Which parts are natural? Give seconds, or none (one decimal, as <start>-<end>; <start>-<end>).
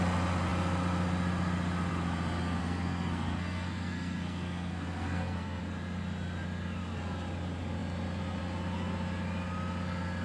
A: 0.0-2.6; 5.6-10.2